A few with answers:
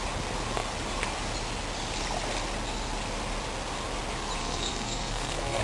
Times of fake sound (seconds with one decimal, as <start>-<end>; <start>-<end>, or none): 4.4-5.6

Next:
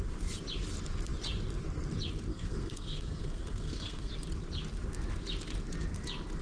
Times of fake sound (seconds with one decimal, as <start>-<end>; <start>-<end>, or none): 2.3-4.1

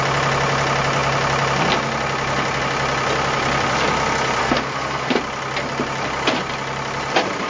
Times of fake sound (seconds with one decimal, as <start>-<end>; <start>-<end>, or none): 4.4-5.2

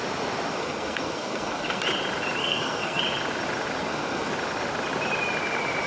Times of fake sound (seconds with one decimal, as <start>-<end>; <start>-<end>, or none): 0.5-1.8; 2.4-3.0; 3.8-4.3

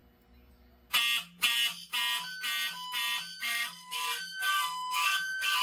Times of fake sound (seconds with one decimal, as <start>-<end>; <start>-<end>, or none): 3.4-5.6